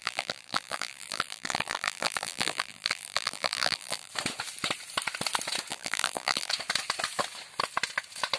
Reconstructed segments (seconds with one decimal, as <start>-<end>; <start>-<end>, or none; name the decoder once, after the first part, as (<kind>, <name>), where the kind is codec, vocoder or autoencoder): 0.0-4.1 (vocoder, BigVGAN v2); 5.7-6.5